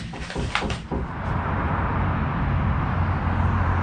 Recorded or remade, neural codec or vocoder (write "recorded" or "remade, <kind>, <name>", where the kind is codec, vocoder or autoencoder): recorded